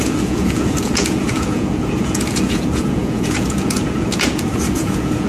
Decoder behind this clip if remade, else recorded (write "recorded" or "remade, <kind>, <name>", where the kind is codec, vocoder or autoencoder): remade, vocoder, Vocos